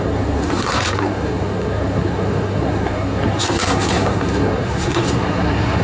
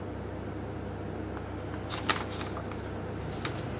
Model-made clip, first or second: first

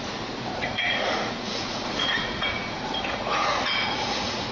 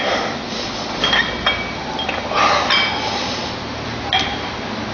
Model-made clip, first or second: first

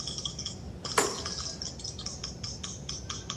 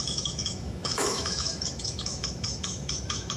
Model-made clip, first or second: second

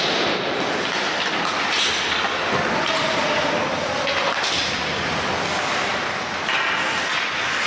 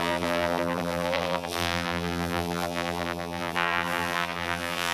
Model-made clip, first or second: second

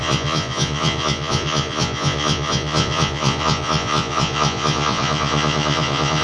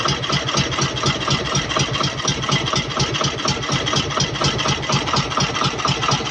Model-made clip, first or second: first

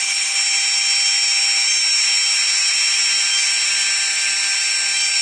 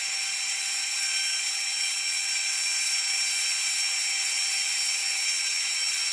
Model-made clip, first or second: second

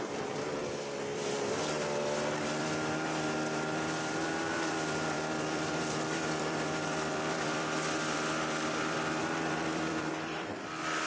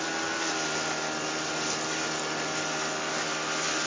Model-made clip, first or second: first